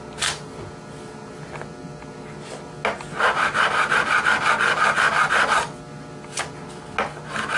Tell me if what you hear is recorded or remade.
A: recorded